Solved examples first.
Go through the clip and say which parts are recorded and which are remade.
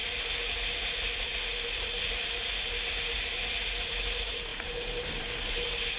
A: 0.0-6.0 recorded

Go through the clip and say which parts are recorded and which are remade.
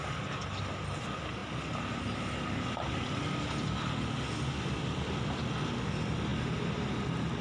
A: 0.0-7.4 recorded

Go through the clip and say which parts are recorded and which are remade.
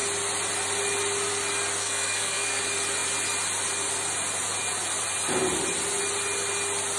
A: 0.0-1.8 recorded; 1.8-2.6 remade; 2.6-7.0 recorded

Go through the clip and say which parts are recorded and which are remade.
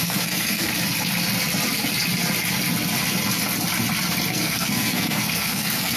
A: 0.0-0.7 remade; 0.7-4.3 recorded; 4.3-6.0 remade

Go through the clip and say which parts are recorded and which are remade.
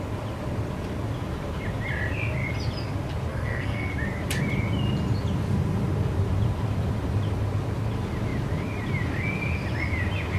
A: 0.0-3.3 recorded; 3.3-3.9 remade; 3.9-10.4 recorded